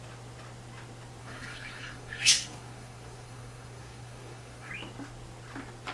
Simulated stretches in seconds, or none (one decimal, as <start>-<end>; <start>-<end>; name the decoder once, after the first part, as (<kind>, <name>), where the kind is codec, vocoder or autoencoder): 1.2-4.7 (codec, SNAC)